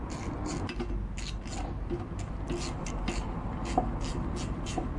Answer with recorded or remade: recorded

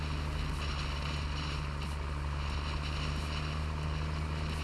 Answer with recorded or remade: recorded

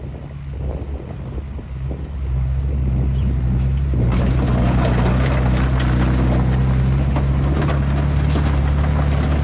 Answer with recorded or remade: recorded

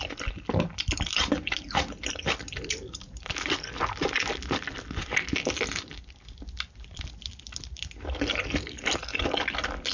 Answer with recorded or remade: recorded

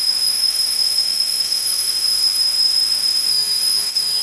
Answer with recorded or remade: remade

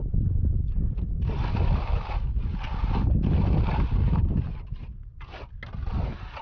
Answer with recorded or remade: recorded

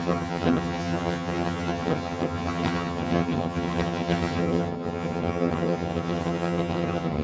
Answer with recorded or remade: remade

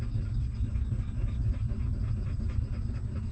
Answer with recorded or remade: recorded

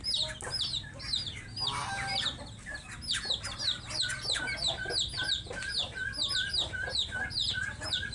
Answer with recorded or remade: recorded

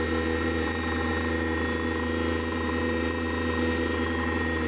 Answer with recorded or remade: remade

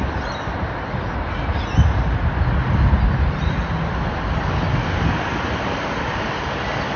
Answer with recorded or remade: recorded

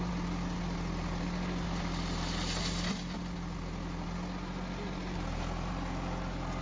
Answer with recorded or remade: recorded